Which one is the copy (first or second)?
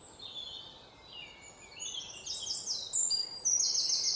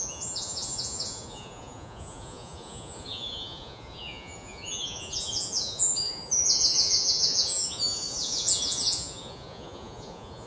second